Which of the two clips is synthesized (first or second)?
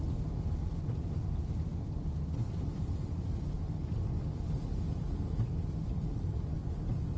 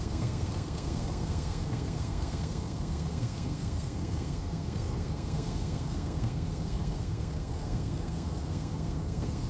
second